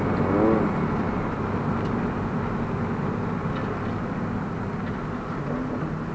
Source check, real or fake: real